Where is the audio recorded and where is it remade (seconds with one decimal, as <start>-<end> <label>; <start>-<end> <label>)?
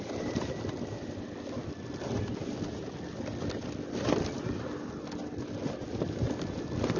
0.0-7.0 recorded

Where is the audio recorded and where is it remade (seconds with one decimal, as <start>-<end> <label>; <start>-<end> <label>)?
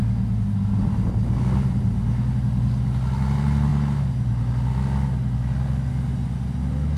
0.0-7.0 recorded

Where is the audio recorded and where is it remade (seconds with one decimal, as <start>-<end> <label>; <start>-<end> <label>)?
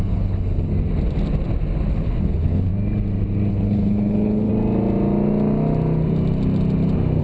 0.0-0.7 remade; 0.7-1.9 recorded; 1.9-2.7 remade; 2.7-3.5 recorded; 3.5-4.5 remade; 4.5-7.2 recorded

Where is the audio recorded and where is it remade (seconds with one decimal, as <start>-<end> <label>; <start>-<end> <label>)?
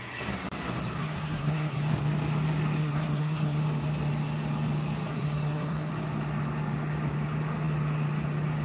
0.0-1.0 recorded; 1.0-1.8 remade; 1.8-2.8 recorded; 2.8-3.6 remade; 3.6-5.1 recorded; 5.1-5.9 remade; 5.9-8.6 recorded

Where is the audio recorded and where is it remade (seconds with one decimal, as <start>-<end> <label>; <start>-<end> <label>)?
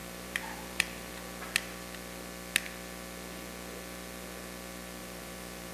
0.0-1.1 remade; 1.1-5.0 recorded; 5.0-5.7 remade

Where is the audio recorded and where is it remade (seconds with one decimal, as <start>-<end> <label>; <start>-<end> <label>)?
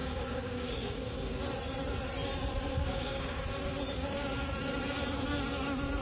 0.0-1.4 remade; 1.4-2.7 recorded; 2.7-3.4 remade; 3.4-6.0 recorded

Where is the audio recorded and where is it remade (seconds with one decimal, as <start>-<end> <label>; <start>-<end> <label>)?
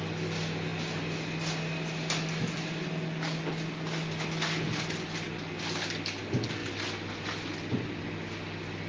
0.0-8.9 recorded